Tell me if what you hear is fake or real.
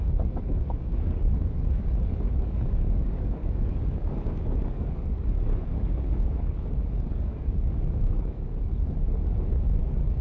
fake